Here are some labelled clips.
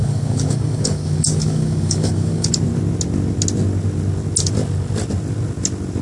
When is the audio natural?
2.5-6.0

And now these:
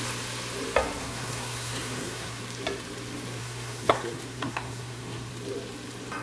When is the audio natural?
0.0-1.0; 2.4-3.4; 5.3-6.2

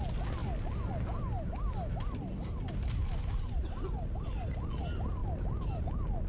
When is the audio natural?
0.0-5.2; 5.8-6.3

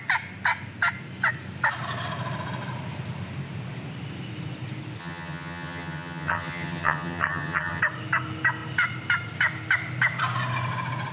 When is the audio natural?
0.0-5.0; 7.8-11.1

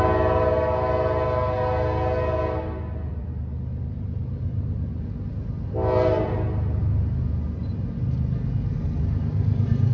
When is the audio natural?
0.0-3.1; 5.3-9.9

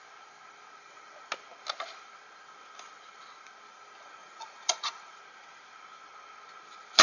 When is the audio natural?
0.0-4.2; 5.2-7.0

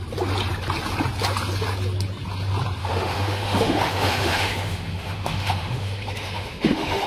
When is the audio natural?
0.0-2.8

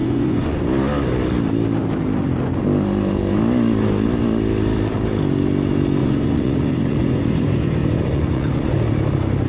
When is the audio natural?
0.6-6.0; 8.8-9.5